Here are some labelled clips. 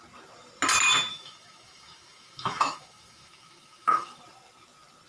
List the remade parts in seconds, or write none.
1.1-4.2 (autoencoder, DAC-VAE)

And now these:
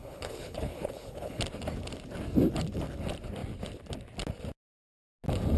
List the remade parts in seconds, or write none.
0.0-1.4 (codec, HILCodec)